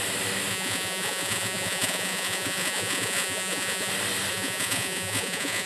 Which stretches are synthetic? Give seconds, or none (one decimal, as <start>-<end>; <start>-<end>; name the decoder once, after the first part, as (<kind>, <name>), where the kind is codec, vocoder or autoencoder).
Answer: 0.5-3.9 (vocoder, Vocos); 4.3-5.7